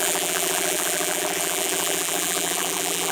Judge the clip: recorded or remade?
remade